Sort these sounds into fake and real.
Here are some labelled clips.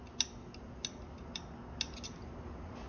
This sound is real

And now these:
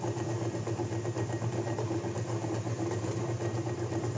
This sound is real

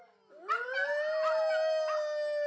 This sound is real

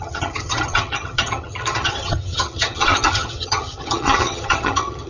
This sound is fake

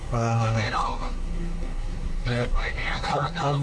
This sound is fake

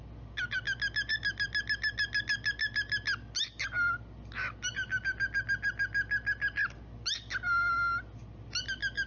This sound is real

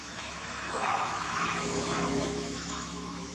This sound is fake